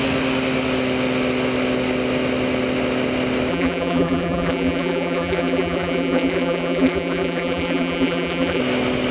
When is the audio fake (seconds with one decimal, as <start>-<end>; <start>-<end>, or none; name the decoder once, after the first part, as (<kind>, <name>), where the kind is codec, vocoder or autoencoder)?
3.5-8.6 (vocoder, BigVGAN v2)